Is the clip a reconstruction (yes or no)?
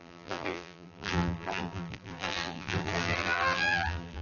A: yes